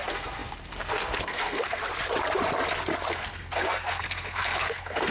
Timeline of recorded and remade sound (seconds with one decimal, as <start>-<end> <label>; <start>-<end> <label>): 0.0-1.8 remade; 1.8-3.1 recorded; 3.1-5.1 remade